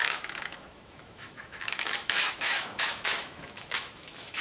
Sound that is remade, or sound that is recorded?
remade